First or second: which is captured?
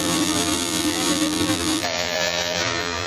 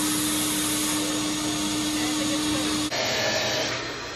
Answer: second